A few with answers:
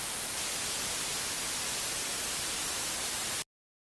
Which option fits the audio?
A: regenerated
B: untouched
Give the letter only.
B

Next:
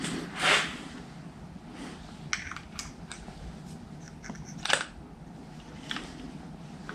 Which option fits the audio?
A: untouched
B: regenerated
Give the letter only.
A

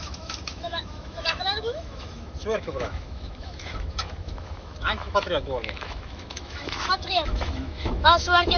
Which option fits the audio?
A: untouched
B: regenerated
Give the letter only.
B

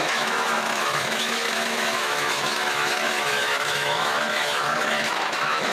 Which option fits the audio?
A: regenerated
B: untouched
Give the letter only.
A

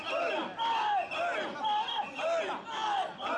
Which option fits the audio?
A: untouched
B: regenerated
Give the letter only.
A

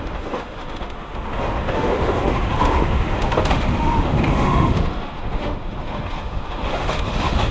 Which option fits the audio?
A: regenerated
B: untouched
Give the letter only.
A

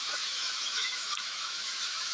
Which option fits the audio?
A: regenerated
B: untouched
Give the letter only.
A